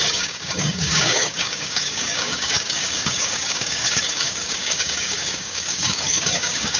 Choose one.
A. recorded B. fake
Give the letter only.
B